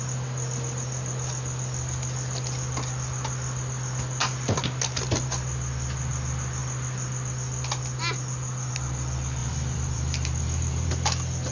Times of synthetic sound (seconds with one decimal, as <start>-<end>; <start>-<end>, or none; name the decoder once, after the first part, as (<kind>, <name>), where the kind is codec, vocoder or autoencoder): 9.4-10.9 (vocoder, BigVGAN v2)